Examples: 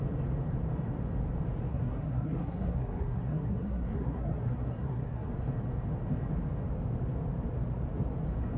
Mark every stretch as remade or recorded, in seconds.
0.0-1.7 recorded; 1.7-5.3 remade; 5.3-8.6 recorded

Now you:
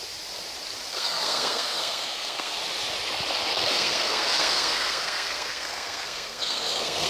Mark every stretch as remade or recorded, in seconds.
0.0-0.9 recorded; 0.9-2.6 remade; 2.6-3.5 recorded; 3.5-7.1 remade

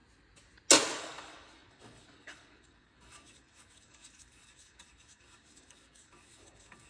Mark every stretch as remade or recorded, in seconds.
0.0-1.0 recorded; 1.0-6.9 remade

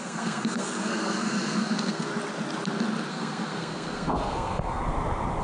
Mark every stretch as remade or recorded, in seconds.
0.0-2.1 remade; 2.1-3.1 recorded; 3.1-4.8 remade; 4.8-5.4 recorded

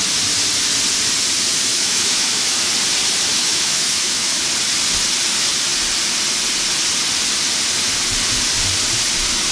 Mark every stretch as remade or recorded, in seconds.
0.0-1.7 recorded; 1.7-2.7 remade; 2.7-3.3 recorded; 3.3-4.4 remade; 4.4-9.5 recorded

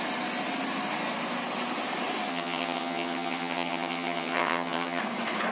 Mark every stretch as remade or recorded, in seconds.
0.0-2.3 recorded; 2.3-5.0 remade; 5.0-5.5 recorded

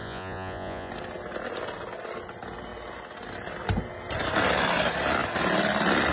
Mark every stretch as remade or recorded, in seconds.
0.0-0.9 remade; 0.9-6.1 recorded

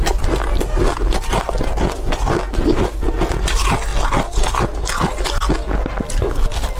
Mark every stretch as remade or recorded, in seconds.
0.0-6.8 recorded